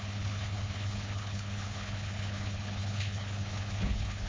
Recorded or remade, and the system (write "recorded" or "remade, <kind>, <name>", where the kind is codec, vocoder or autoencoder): remade, codec, HILCodec